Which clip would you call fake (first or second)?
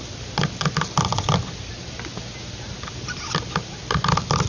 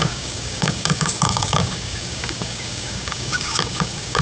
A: second